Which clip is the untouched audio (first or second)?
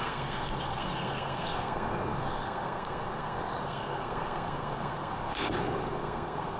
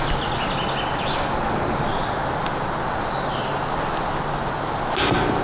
second